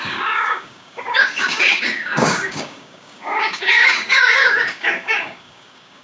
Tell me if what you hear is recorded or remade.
remade